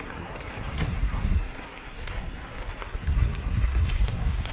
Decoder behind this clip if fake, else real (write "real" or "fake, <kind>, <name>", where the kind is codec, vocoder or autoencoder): fake, codec, SNAC